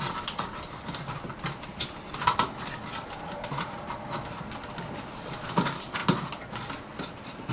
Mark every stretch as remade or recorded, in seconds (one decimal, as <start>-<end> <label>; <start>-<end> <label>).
0.0-7.5 recorded